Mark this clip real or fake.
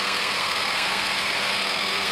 fake